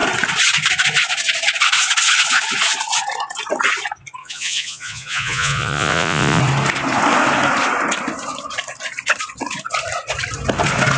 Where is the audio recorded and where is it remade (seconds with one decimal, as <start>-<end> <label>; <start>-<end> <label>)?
0.0-4.2 recorded; 4.2-6.4 remade; 6.4-11.0 recorded